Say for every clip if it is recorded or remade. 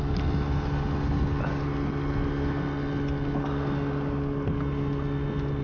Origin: recorded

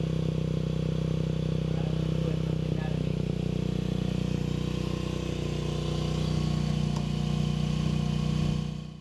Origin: recorded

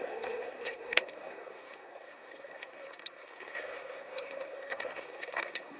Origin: remade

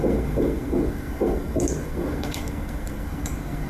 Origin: remade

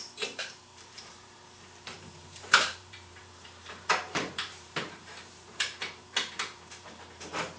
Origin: remade